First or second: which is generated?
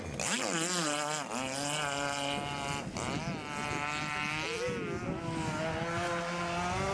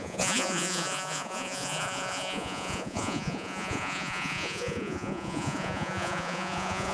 second